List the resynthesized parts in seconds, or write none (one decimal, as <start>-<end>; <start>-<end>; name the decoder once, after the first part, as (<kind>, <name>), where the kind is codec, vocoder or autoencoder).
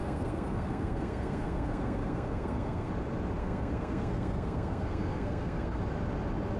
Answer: 0.0-2.9 (codec, SNAC); 3.4-5.8